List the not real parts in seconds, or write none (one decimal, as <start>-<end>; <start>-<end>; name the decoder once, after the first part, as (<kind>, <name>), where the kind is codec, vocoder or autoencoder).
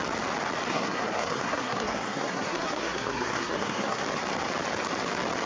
0.7-4.0 (codec, SNAC)